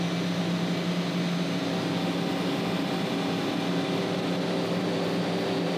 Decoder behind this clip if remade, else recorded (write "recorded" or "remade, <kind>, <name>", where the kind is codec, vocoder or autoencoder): recorded